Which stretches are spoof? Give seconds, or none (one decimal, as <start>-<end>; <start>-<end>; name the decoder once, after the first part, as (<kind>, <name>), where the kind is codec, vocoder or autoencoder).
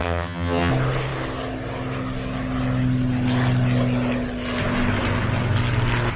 0.0-0.7 (vocoder, HiFi-GAN)